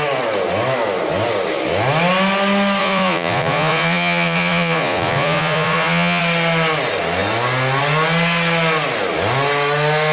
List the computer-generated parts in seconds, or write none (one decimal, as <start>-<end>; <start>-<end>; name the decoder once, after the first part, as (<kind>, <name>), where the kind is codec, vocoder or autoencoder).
2.8-6.2 (vocoder, Vocos)